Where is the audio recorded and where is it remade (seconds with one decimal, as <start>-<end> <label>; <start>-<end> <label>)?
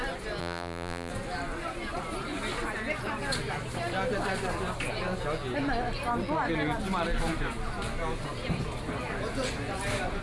0.0-0.4 recorded; 0.4-1.1 remade; 1.1-10.2 recorded